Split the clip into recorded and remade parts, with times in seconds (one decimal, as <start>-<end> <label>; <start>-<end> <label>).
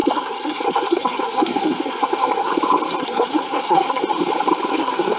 0.0-2.5 remade; 2.5-3.0 recorded; 3.0-4.0 remade; 4.0-4.7 recorded; 4.7-5.2 remade